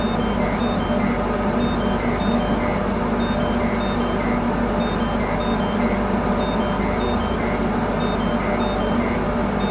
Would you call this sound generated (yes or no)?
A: no